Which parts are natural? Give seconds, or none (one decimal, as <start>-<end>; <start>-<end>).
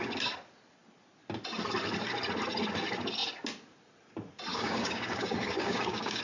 0.0-4.5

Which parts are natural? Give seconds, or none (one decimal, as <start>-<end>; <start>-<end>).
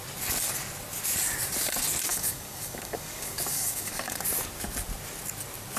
0.0-2.1; 4.2-5.8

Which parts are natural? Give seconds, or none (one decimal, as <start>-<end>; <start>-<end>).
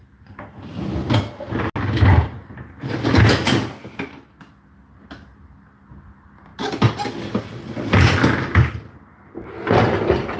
0.0-10.4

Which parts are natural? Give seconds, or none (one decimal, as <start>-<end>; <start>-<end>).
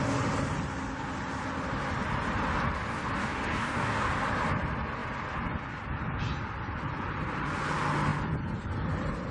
0.0-3.2; 4.1-9.3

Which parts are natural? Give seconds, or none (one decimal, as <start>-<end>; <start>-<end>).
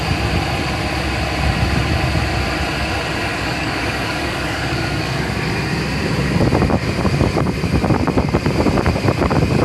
0.0-3.3; 5.5-9.6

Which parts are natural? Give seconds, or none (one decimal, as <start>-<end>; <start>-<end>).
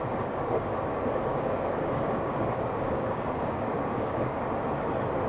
0.0-1.3; 4.4-5.3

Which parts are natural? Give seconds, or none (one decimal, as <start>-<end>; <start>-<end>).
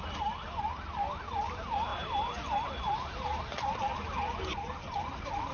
0.0-5.5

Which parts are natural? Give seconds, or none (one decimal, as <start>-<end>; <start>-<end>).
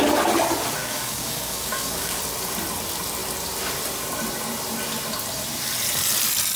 0.0-0.8; 2.2-6.6